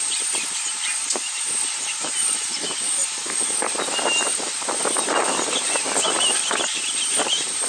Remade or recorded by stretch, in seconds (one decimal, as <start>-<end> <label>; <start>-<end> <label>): 0.0-7.7 remade